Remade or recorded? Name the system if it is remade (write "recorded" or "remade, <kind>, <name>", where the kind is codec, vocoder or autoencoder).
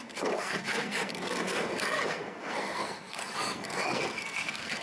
remade, codec, SNAC